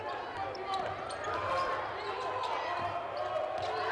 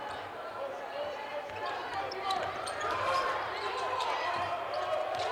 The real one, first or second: first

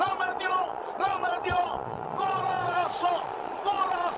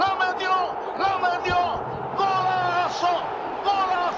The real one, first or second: second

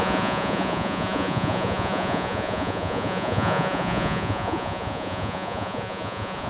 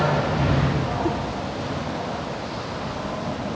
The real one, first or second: second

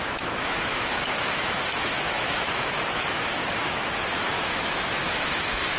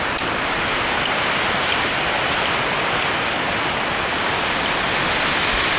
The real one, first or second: second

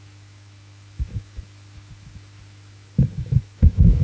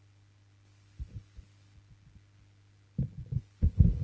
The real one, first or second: second